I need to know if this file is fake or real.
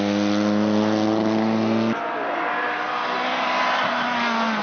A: real